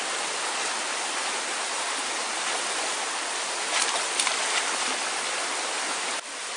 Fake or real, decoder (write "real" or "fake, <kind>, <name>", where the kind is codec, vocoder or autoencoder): real